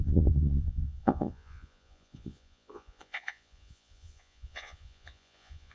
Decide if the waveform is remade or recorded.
remade